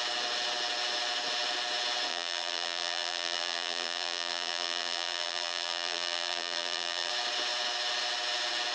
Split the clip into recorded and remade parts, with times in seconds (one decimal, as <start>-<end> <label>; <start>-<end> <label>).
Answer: 0.0-2.1 recorded; 2.1-7.1 remade; 7.1-8.7 recorded